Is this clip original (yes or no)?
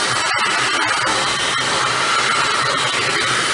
yes